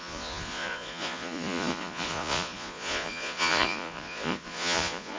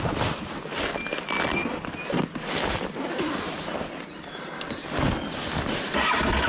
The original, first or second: second